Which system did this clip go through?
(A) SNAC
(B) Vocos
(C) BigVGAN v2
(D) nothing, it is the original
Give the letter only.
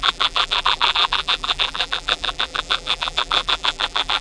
C